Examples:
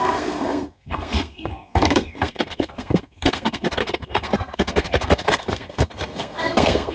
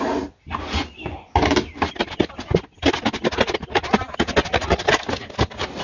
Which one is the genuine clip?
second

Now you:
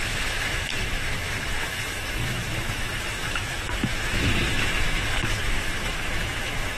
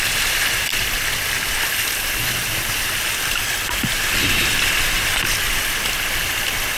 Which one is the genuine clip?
second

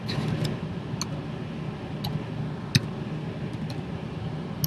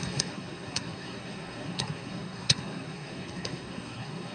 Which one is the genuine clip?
first